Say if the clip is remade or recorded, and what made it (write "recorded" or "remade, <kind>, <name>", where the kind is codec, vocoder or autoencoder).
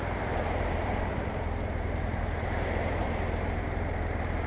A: remade, vocoder, BigVGAN v2